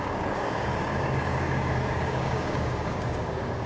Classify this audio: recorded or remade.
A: remade